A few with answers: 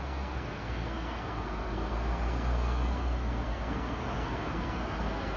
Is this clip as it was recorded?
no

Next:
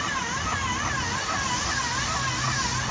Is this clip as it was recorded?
yes